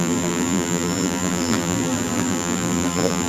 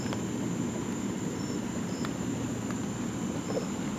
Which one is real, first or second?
second